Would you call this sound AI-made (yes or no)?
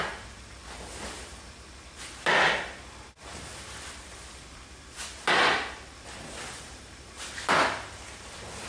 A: no